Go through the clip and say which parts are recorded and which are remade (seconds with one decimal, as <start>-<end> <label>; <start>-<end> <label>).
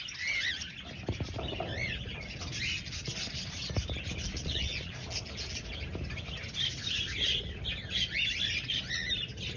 0.0-4.3 recorded; 4.3-5.1 remade; 5.1-9.6 recorded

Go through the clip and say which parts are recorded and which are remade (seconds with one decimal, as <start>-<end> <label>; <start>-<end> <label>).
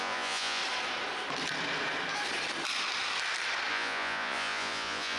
0.0-0.6 remade; 0.6-3.7 recorded; 3.7-5.2 remade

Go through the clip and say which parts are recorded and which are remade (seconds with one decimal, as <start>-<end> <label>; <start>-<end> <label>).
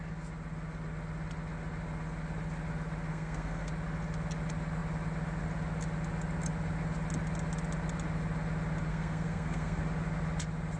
0.0-3.1 recorded; 3.1-3.7 remade; 3.7-8.9 recorded; 8.9-9.8 remade; 9.8-10.8 recorded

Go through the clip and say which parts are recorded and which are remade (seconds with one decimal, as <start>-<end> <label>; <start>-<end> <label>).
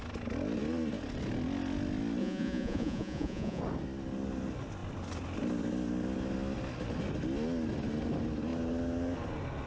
0.0-2.2 recorded; 2.2-3.6 remade; 3.6-9.7 recorded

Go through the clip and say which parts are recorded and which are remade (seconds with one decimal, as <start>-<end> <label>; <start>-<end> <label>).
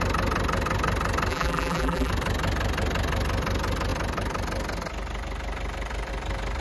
0.0-1.3 recorded; 1.3-2.1 remade; 2.1-6.6 recorded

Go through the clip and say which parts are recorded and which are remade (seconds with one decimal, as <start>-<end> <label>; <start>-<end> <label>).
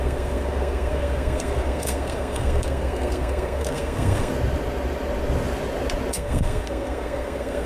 0.0-4.3 remade; 4.3-6.1 recorded; 6.1-7.7 remade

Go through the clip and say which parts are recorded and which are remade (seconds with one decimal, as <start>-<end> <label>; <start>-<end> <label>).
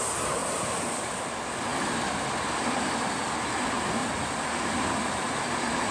0.0-0.4 recorded; 0.4-1.1 remade; 1.1-4.0 recorded; 4.0-5.2 remade; 5.2-5.9 recorded